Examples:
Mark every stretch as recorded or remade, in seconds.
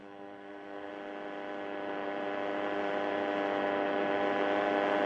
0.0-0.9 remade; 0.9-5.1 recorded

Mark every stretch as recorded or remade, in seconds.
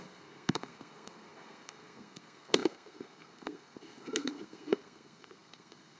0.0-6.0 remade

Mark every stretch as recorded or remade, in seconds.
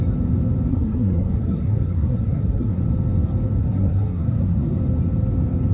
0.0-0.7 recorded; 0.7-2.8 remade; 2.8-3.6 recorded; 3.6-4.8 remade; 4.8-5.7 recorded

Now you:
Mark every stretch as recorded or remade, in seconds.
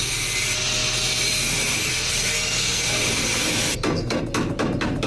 0.0-1.9 recorded; 1.9-3.0 remade; 3.0-3.7 recorded; 3.7-4.2 remade; 4.2-5.1 recorded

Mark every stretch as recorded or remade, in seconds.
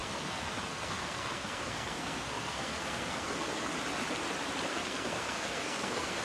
0.0-3.7 remade; 3.7-4.7 recorded; 4.7-6.2 remade